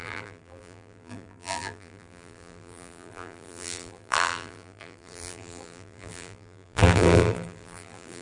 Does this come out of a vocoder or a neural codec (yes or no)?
yes